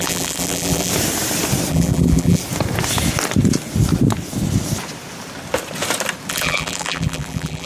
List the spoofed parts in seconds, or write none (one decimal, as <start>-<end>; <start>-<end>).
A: 0.0-0.9; 1.7-2.4; 6.3-7.7